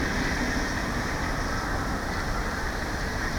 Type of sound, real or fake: fake